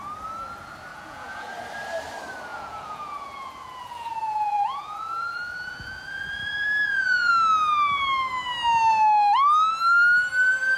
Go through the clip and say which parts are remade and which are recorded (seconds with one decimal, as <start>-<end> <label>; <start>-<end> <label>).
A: 0.0-0.9 recorded; 0.9-1.5 remade; 1.5-2.5 recorded; 2.5-7.3 remade; 7.3-10.8 recorded